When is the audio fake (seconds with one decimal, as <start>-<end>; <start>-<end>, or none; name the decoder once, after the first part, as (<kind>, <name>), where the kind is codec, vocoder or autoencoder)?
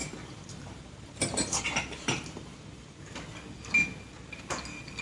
0.0-3.0 (vocoder, BigVGAN v2)